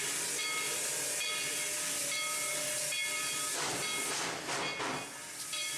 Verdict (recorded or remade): recorded